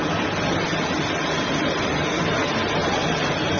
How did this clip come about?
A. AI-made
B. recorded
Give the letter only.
B